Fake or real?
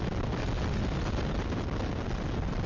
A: real